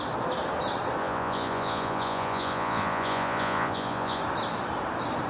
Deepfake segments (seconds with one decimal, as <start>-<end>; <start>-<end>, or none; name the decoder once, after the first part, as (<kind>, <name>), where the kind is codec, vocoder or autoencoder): 1.0-4.2 (vocoder, Vocos)